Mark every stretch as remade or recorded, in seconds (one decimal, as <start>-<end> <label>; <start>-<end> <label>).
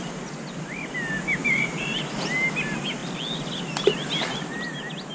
0.0-1.4 recorded; 1.4-2.0 remade; 2.0-5.1 recorded